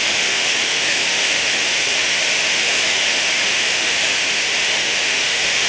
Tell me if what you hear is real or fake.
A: fake